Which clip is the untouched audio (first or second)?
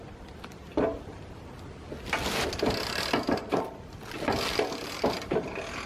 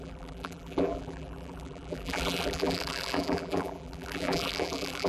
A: first